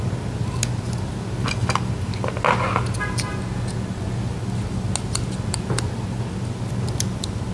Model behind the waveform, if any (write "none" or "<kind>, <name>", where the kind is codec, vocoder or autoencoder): none